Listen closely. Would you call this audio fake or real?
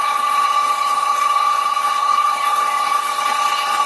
fake